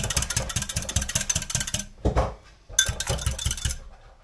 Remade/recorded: recorded